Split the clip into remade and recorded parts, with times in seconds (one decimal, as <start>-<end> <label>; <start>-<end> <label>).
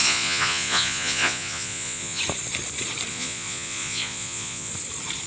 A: 0.0-2.2 remade; 2.2-3.1 recorded; 3.1-4.7 remade; 4.7-5.3 recorded